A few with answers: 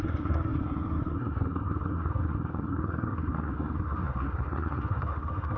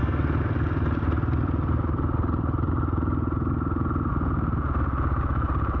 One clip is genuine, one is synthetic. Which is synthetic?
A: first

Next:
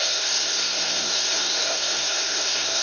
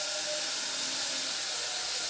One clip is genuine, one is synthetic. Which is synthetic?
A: first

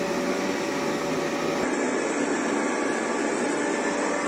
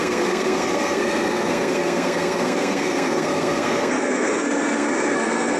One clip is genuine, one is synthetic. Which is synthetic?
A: second